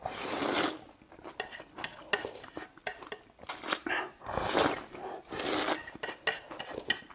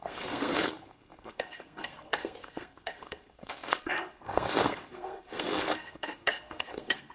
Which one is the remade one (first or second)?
second